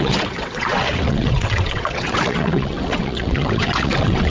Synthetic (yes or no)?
yes